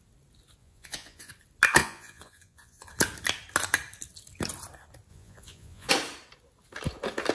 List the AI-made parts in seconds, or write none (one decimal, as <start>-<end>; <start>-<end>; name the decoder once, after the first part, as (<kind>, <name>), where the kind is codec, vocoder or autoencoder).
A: 0.6-1.3 (vocoder, Vocos); 1.8-2.9; 5.1-5.9